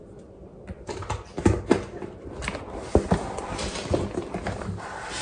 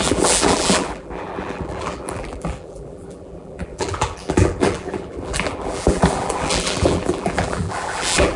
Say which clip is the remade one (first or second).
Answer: second